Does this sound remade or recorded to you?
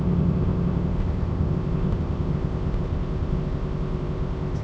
remade